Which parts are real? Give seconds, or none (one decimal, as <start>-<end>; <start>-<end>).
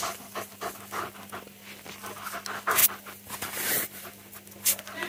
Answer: 0.0-2.8; 4.0-5.1